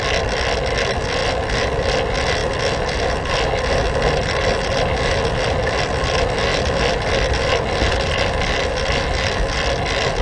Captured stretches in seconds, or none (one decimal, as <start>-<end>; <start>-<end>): 0.0-10.2